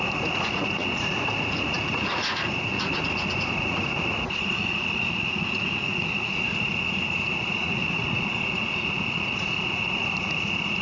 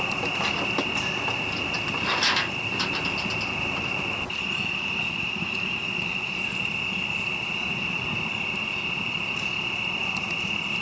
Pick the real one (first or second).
second